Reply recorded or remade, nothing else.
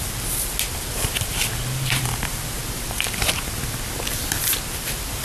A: remade